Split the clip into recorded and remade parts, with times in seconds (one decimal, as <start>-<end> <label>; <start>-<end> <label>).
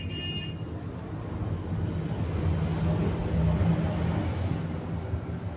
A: 0.0-5.6 recorded